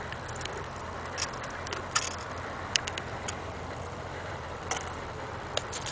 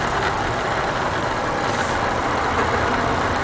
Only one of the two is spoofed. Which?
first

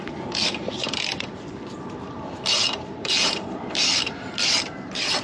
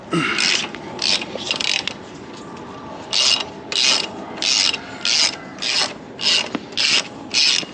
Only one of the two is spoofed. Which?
first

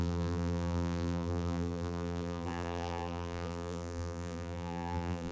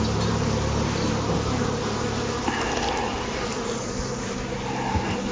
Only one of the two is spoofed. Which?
first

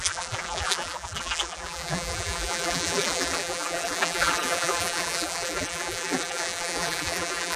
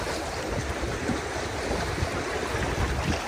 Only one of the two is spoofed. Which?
first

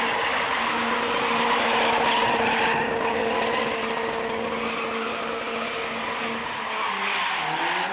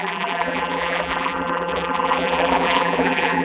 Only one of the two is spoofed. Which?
second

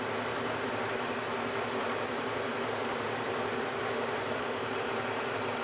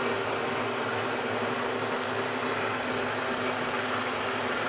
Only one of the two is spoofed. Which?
first